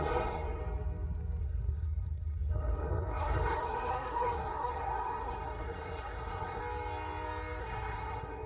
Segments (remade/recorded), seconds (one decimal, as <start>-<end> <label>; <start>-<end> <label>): 0.0-0.6 remade; 0.6-1.4 recorded; 1.4-6.6 remade; 6.6-7.6 recorded; 7.6-8.5 remade